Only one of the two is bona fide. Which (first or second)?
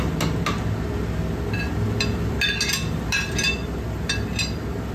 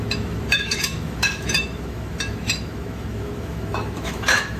first